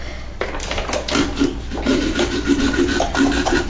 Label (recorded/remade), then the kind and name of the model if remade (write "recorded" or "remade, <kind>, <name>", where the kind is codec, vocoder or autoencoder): remade, vocoder, BigVGAN v2